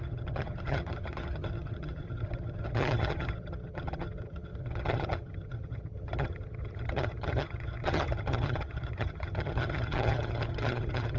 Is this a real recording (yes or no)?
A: no